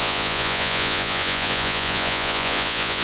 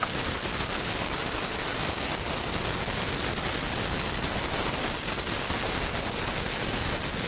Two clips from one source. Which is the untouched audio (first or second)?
second